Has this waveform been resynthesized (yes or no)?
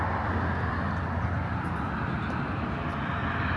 no